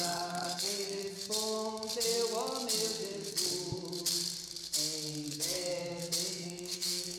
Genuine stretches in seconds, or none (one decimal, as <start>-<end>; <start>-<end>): 1.0-5.3; 5.7-6.3